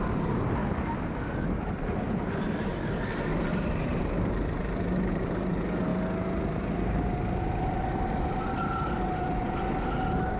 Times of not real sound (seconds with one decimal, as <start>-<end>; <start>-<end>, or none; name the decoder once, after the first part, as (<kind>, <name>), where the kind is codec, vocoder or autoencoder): 3.9-5.5 (vocoder, BigVGAN v2)